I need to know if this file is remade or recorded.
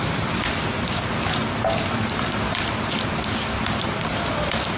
recorded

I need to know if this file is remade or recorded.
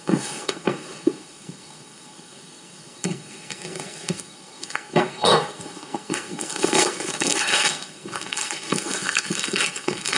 remade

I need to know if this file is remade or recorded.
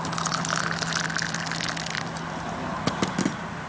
recorded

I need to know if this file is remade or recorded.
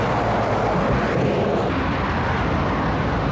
recorded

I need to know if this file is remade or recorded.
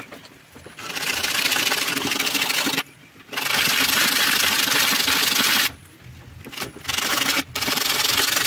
recorded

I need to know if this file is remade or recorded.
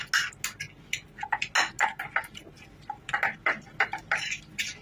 recorded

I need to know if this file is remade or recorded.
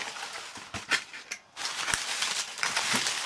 recorded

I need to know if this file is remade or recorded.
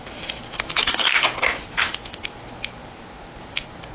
recorded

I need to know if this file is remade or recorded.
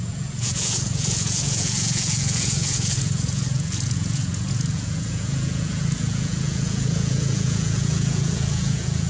remade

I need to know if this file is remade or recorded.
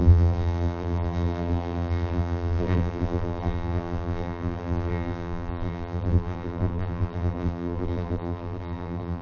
remade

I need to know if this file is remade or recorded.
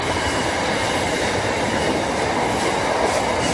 recorded